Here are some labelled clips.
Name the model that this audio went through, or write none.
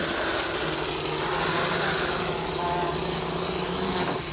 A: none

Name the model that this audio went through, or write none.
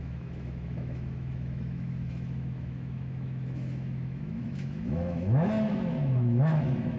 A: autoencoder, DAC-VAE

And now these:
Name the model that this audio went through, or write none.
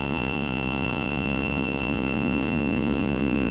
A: vocoder, Vocos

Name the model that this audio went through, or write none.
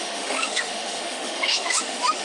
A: autoencoder, DAC-VAE